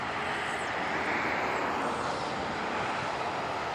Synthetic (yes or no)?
no